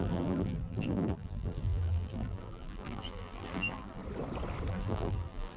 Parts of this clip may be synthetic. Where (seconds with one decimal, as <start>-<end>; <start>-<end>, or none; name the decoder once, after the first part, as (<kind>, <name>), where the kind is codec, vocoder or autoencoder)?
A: 0.0-4.0 (vocoder, BigVGAN v2); 4.7-5.6